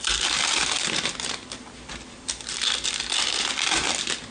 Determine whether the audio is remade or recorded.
recorded